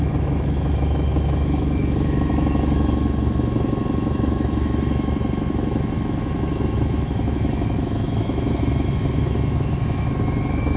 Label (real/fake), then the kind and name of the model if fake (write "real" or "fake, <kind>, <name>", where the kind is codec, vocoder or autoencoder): fake, autoencoder, DAC-VAE